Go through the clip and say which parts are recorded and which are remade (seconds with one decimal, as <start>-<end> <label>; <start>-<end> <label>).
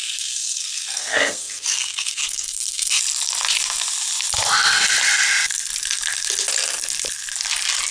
0.0-3.0 remade; 3.0-7.9 recorded